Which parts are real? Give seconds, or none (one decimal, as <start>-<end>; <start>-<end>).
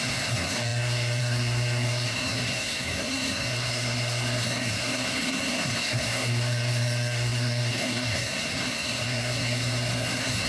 none